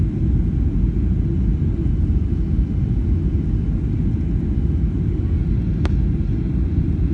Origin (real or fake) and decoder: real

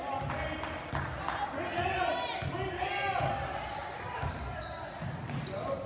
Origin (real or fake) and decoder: real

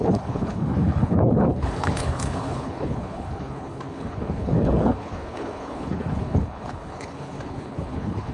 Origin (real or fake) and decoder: fake, codec, HILCodec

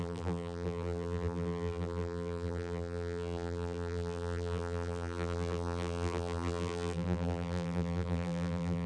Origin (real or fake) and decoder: fake, vocoder, BigVGAN v2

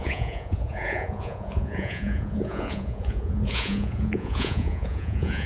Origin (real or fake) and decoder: fake, vocoder, Vocos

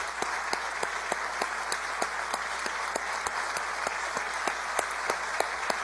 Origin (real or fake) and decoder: real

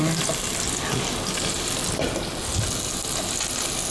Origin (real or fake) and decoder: real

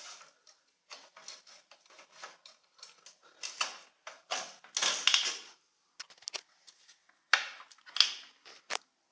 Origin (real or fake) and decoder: real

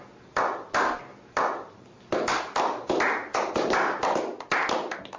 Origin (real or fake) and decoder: real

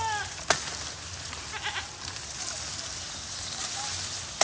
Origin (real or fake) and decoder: real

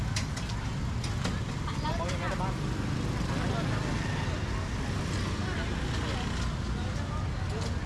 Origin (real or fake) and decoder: real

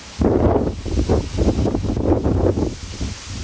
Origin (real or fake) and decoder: real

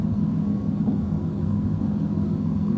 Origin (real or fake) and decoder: fake, codec, SNAC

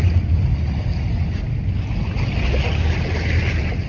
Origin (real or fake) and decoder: real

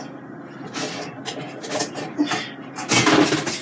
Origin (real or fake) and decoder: real